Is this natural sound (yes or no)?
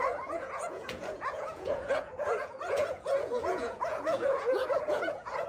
no